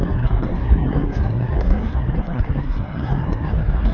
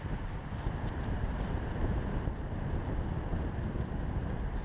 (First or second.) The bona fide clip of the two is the second